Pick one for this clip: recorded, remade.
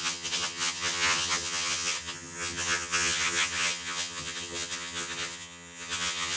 remade